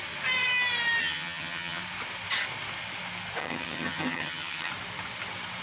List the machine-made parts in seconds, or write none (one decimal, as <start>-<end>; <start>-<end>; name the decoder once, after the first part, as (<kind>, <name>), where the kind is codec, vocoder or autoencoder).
1.0-1.8 (vocoder, HiFi-GAN); 3.4-4.7